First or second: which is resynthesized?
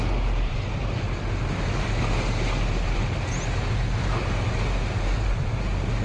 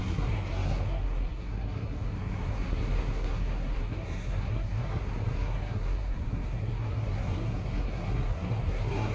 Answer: second